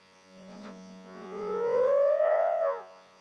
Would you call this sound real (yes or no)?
no